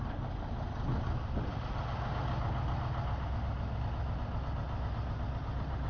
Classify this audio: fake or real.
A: real